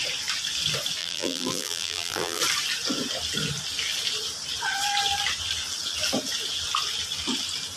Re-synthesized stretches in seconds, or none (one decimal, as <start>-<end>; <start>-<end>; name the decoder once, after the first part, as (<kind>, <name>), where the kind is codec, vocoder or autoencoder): 1.0-2.4 (vocoder, BigVGAN v2)